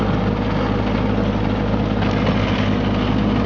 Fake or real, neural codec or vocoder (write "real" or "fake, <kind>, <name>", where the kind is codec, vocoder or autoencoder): real